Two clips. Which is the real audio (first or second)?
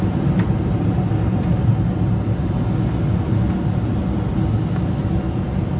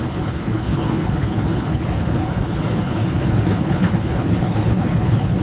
first